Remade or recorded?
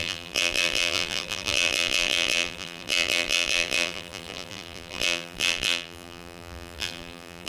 remade